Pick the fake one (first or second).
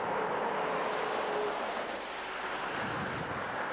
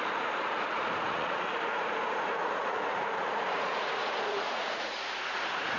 second